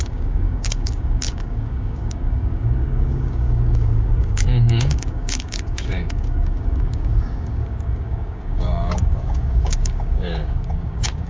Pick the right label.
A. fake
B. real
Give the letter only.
A